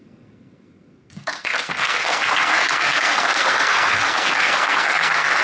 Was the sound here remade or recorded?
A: remade